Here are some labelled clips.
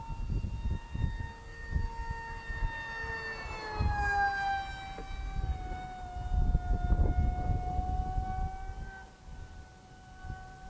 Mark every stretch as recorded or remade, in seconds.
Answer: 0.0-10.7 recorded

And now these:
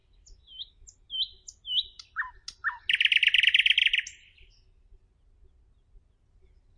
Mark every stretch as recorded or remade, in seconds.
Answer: 0.0-6.8 recorded

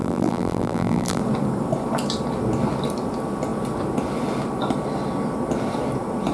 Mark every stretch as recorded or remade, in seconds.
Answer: 0.0-1.2 remade; 1.2-6.3 recorded

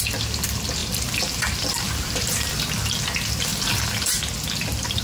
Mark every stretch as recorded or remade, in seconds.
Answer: 0.0-0.8 recorded; 0.8-2.6 remade; 2.6-3.5 recorded; 3.5-4.1 remade; 4.1-5.0 recorded